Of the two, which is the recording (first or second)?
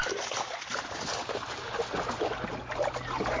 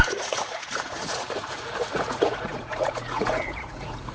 first